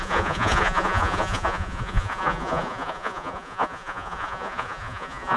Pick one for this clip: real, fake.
fake